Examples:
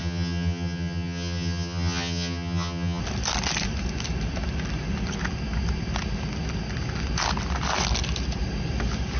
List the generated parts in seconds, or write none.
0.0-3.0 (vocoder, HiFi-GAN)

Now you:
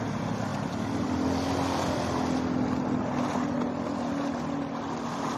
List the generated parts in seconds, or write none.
none

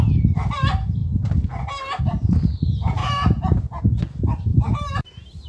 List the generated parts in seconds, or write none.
4.5-5.5 (vocoder, BigVGAN v2)

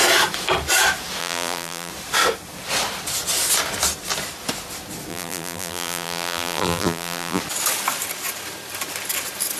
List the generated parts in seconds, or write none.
1.2-1.9 (vocoder, BigVGAN v2); 5.1-7.4

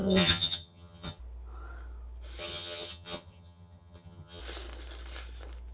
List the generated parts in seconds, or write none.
0.0-1.2 (vocoder, HiFi-GAN); 2.4-4.4

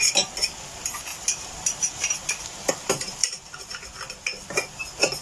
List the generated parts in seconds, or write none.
1.1-2.7 (vocoder, BigVGAN v2); 3.2-3.8